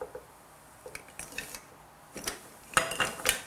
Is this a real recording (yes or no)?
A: yes